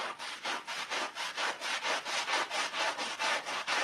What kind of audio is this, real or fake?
fake